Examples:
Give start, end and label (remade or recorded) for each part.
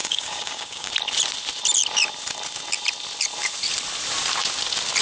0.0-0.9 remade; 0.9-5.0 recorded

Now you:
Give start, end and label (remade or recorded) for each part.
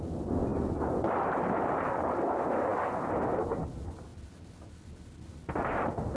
0.0-6.2 recorded